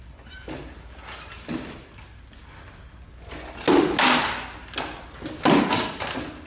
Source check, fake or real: real